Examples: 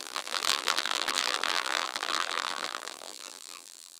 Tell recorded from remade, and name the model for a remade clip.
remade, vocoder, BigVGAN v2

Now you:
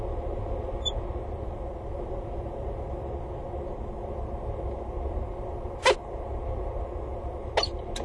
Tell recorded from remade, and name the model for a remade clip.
recorded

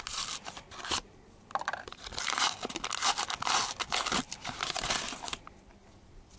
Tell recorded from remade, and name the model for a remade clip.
recorded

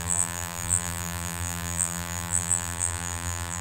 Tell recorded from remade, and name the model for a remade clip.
remade, vocoder, BigVGAN v2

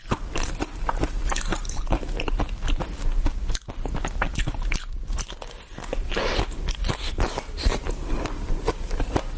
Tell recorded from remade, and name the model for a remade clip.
recorded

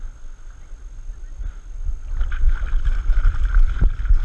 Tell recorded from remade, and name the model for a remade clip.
remade, vocoder, BigVGAN v2